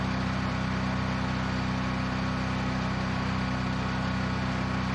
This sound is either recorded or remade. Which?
recorded